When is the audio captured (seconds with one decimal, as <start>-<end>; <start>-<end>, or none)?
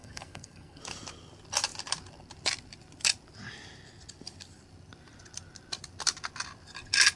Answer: 0.8-7.2